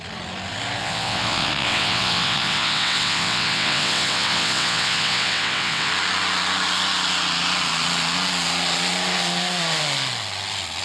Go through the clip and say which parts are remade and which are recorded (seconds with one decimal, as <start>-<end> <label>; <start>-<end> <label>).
0.0-0.8 recorded; 0.8-5.9 remade; 5.9-10.8 recorded